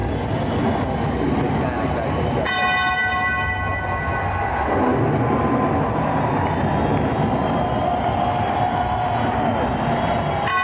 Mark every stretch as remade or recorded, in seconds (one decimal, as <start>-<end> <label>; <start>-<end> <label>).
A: 0.0-10.6 recorded